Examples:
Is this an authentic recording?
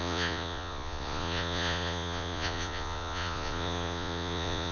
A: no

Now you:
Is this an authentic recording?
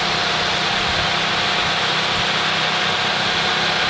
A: yes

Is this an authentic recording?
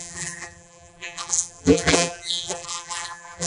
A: no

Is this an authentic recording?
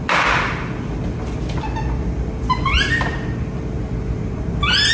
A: yes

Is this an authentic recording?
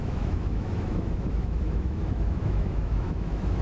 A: no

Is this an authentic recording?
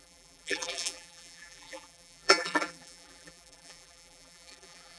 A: no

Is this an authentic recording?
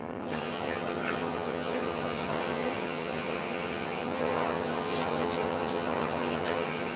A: no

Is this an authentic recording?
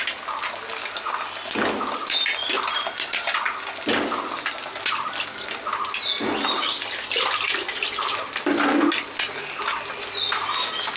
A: yes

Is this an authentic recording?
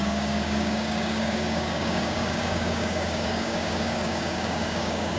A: no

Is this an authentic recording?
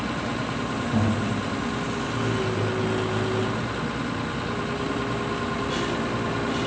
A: yes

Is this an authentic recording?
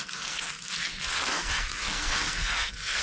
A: no